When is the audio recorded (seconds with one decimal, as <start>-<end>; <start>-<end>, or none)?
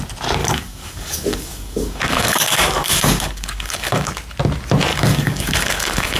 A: 0.0-0.4; 4.1-4.9